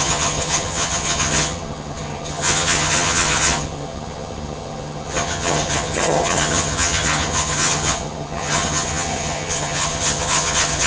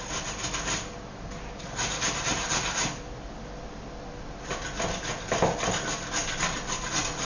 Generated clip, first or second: first